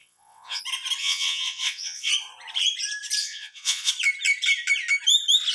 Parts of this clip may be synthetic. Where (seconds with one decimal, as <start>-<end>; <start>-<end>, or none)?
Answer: 0.0-0.6; 1.0-2.1; 3.2-3.9